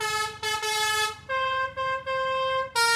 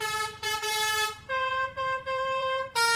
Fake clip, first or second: second